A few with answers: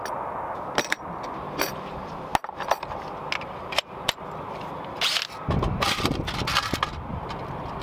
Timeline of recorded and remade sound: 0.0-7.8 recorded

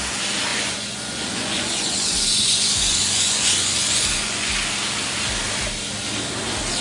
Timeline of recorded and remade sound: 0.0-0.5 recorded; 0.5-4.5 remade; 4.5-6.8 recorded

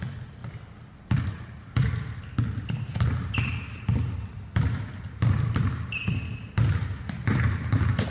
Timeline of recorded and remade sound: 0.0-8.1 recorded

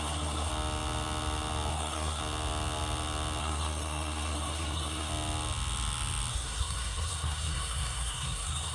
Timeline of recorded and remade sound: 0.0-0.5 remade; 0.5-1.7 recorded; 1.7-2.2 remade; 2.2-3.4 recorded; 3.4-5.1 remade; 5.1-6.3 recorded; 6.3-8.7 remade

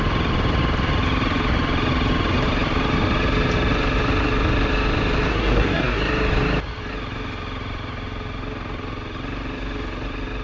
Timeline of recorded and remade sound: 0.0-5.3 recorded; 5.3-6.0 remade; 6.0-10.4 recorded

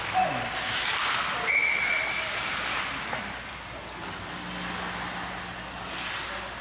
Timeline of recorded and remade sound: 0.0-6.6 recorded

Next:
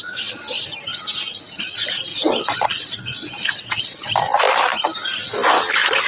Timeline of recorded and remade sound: 0.0-2.1 recorded; 2.1-4.1 remade; 4.1-6.1 recorded